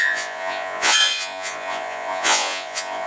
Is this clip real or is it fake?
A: fake